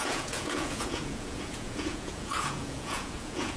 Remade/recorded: remade